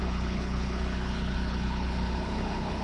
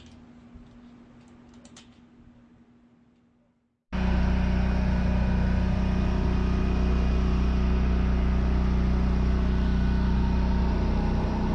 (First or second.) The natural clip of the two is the second